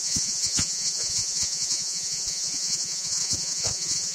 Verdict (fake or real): fake